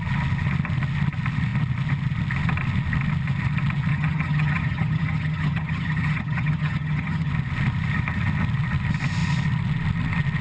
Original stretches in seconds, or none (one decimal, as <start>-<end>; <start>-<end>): 0.0-3.9; 7.3-10.4